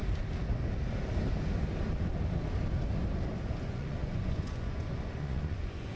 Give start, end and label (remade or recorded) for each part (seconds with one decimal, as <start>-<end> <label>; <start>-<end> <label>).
0.0-3.6 recorded; 3.6-6.0 remade